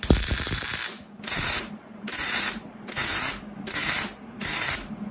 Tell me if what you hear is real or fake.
fake